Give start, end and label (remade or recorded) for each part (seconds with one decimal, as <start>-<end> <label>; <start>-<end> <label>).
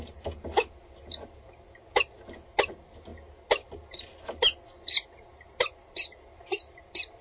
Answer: 0.0-7.2 recorded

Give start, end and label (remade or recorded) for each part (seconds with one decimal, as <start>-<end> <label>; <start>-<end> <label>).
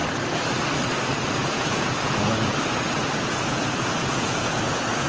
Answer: 0.0-1.3 recorded; 1.3-5.1 remade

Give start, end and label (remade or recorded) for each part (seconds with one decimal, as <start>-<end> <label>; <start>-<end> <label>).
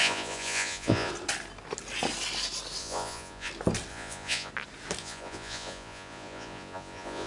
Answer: 0.0-1.1 remade; 1.1-2.8 recorded; 2.8-3.5 remade; 3.5-3.9 recorded; 3.9-4.5 remade; 4.5-5.0 recorded; 5.0-7.3 remade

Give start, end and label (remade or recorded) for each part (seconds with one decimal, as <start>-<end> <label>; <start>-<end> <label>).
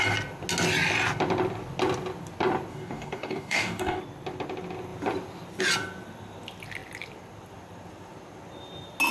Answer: 0.0-2.7 recorded; 2.7-4.0 remade; 4.0-9.1 recorded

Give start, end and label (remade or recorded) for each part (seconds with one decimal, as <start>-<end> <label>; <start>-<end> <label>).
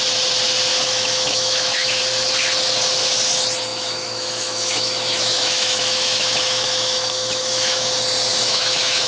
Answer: 0.0-0.7 recorded; 0.7-2.0 remade; 2.0-3.7 recorded; 3.7-7.9 remade; 7.9-8.3 recorded; 8.3-9.1 remade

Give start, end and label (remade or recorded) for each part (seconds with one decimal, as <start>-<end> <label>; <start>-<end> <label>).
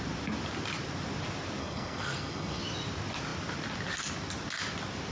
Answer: 0.0-1.6 recorded; 1.6-2.6 remade; 2.6-5.1 recorded